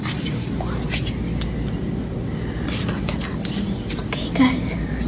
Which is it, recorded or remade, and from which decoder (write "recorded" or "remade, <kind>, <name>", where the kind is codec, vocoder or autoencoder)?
recorded